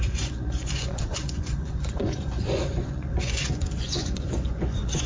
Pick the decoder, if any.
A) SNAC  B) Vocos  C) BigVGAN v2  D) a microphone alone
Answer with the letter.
B